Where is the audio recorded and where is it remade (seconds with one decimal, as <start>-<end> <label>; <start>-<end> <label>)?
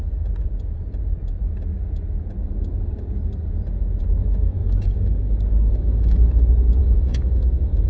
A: 0.0-4.6 recorded; 4.6-6.3 remade; 6.3-6.8 recorded; 6.8-7.9 remade